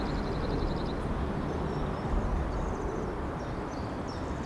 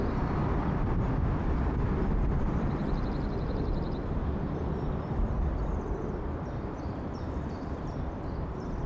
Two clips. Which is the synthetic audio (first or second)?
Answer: second